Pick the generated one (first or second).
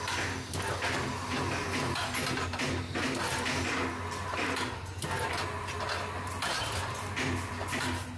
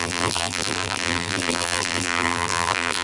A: second